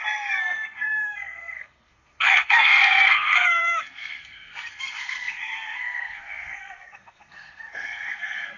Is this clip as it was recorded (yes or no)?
no